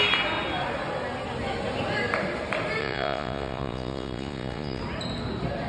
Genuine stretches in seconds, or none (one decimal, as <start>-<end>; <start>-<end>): 0.0-2.8; 4.8-5.7